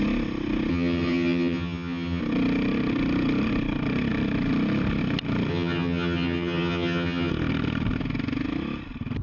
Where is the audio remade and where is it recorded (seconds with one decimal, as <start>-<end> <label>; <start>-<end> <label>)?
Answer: 0.0-0.7 recorded; 0.7-2.2 remade; 2.2-5.5 recorded; 5.5-7.3 remade; 7.3-9.2 recorded